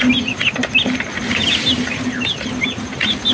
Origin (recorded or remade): recorded